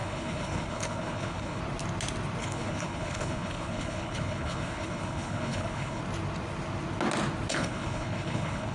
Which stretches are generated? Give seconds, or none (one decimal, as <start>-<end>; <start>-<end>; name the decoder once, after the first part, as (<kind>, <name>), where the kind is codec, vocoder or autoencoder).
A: 0.0-1.6 (codec, HILCodec); 2.4-6.0; 7.5-8.7